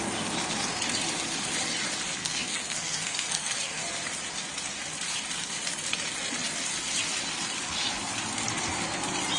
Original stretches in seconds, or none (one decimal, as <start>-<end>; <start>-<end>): 0.0-2.2; 3.8-9.4